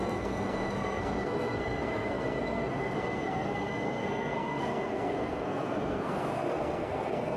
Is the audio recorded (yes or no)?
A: no